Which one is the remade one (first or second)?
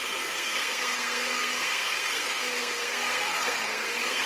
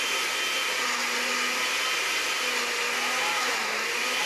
first